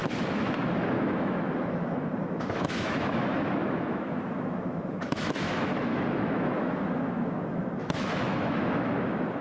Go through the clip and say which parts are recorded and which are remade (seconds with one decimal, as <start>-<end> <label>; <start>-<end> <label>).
0.0-9.4 remade